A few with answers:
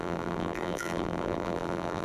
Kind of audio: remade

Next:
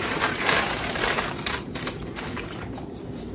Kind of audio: remade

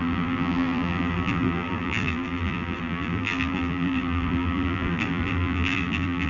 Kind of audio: remade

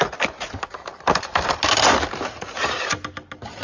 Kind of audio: recorded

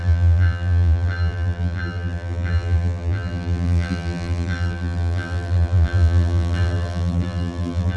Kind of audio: remade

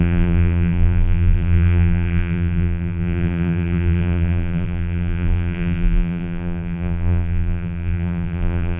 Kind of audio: remade